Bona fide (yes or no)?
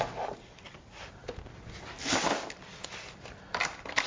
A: yes